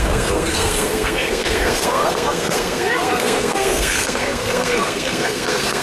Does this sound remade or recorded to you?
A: remade